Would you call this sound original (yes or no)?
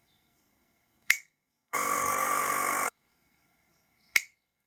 no